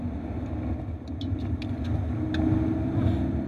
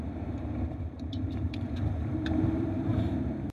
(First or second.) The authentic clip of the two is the first